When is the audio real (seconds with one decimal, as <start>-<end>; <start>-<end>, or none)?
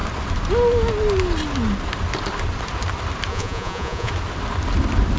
0.0-3.3; 4.1-5.2